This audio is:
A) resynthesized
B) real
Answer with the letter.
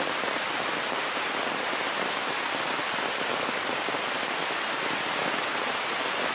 B